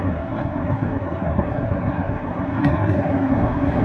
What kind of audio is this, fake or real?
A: fake